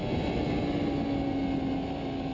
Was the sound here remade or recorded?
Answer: recorded